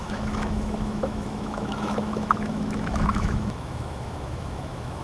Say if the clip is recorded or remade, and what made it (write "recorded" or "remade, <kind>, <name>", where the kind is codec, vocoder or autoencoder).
remade, autoencoder, DAC-VAE